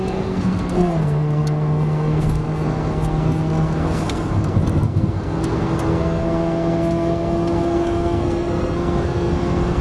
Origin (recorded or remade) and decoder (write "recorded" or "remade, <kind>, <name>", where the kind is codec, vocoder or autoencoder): remade, codec, SNAC